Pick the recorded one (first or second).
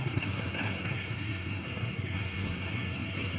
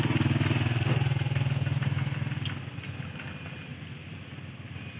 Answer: second